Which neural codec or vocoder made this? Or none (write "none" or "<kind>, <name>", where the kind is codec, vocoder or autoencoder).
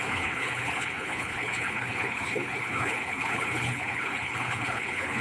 codec, HILCodec